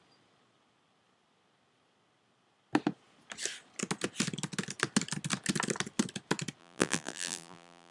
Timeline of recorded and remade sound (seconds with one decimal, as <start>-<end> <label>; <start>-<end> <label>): 0.0-6.6 recorded; 6.6-7.9 remade